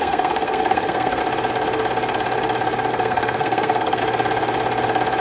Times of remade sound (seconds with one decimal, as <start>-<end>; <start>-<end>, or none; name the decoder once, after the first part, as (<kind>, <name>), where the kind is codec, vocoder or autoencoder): 0.0-1.2 (codec, SNAC); 2.9-4.0

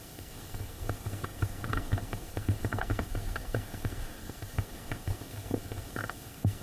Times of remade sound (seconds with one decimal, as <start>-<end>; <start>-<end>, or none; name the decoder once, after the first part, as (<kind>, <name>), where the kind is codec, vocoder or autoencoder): 0.0-6.6 (codec, SNAC)